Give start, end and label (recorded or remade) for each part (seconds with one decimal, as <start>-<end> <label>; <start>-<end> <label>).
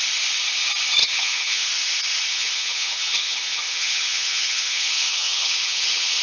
0.0-1.0 recorded; 1.0-1.7 remade; 1.7-2.3 recorded; 2.3-6.2 remade